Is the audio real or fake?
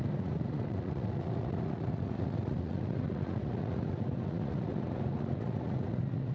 fake